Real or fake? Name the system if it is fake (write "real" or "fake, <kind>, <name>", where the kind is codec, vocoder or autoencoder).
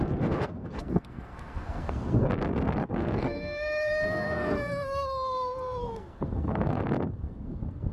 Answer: fake, codec, SNAC